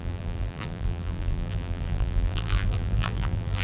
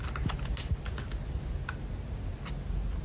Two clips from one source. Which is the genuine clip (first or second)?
second